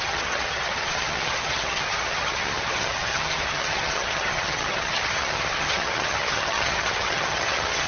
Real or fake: fake